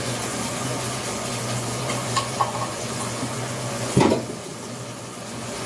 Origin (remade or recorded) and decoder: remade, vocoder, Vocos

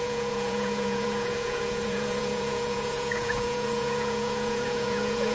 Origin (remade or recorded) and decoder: remade, vocoder, Vocos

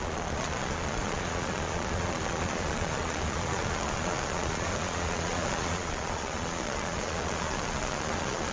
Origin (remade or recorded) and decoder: remade, vocoder, Vocos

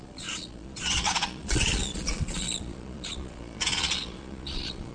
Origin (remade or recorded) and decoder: remade, vocoder, Vocos